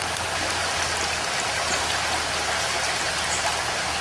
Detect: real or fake real